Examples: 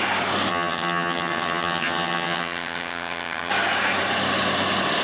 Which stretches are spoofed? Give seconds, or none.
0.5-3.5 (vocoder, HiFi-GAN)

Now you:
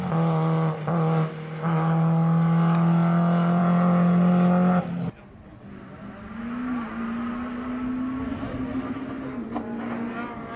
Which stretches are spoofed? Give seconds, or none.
none

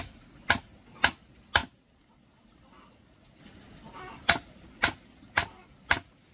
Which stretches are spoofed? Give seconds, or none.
none

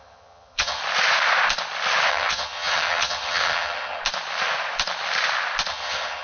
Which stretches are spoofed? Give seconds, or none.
0.0-0.8 (vocoder, HiFi-GAN); 2.1-4.0; 5.7-6.2

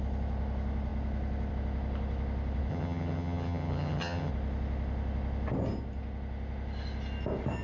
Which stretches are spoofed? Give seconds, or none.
2.7-4.3 (vocoder, HiFi-GAN)

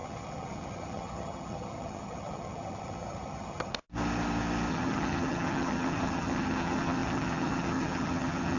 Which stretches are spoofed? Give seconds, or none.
0.0-3.7 (vocoder, HiFi-GAN); 4.7-8.6